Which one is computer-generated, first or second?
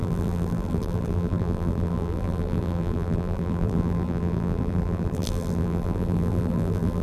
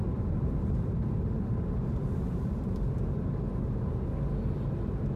first